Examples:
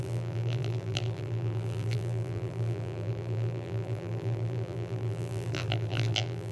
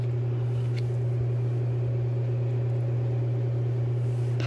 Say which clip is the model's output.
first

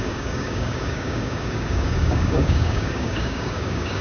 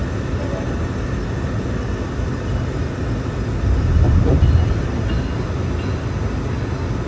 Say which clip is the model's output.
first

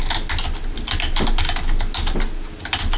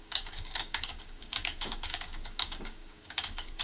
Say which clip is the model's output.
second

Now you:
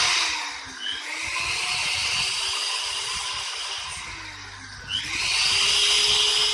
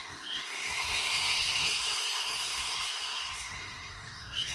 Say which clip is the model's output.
second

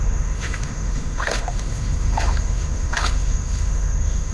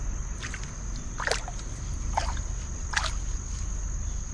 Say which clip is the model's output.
first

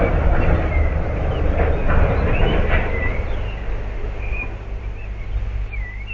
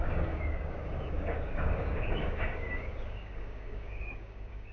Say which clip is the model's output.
second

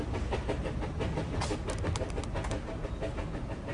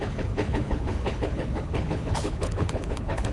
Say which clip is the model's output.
second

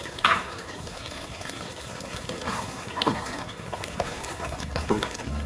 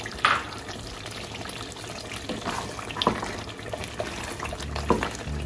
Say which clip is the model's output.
first